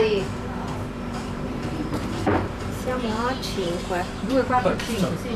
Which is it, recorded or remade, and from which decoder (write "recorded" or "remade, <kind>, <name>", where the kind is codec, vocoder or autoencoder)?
remade, vocoder, BigVGAN v2